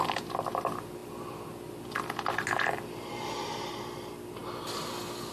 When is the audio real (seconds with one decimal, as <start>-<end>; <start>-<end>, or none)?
0.0-5.3